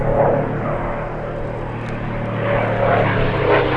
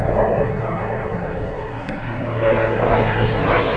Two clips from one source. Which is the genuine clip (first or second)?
first